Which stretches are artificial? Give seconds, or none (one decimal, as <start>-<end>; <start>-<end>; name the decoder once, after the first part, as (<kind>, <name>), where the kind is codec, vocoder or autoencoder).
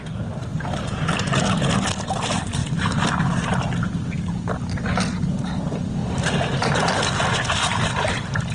0.5-1.1 (vocoder, BigVGAN v2); 2.6-4.0; 6.0-6.7